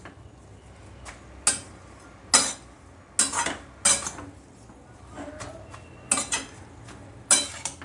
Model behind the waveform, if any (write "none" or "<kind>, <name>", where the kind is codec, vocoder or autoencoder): none